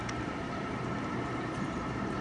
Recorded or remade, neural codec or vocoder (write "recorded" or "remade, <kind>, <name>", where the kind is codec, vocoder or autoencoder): remade, vocoder, BigVGAN v2